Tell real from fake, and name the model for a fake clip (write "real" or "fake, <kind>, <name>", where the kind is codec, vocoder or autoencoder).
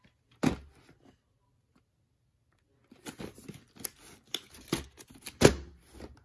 real